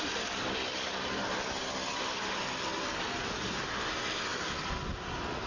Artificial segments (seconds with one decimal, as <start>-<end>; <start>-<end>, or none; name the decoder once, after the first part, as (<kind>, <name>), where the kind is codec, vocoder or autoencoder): none